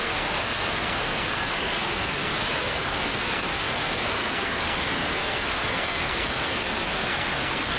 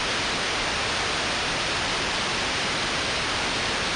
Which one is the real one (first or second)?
second